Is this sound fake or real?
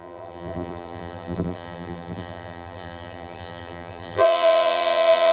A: fake